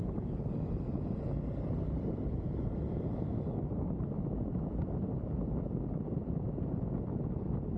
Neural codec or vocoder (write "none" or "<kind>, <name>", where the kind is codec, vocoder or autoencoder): none